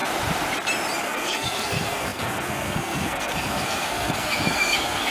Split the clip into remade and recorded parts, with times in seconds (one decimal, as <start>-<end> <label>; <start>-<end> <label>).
0.0-1.0 recorded; 1.0-5.1 remade